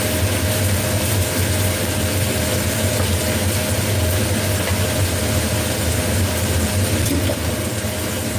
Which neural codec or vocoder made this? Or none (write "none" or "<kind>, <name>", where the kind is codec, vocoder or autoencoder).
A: none